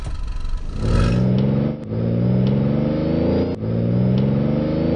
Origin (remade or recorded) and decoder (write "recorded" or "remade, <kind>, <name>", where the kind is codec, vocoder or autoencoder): recorded